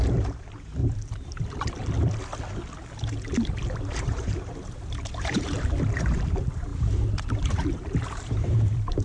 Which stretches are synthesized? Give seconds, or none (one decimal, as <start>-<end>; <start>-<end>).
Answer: 0.0-0.8; 3.7-6.7; 7.4-9.0